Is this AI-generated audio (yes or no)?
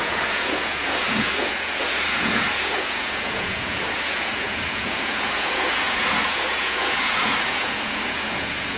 yes